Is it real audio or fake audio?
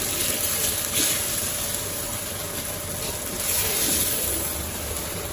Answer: real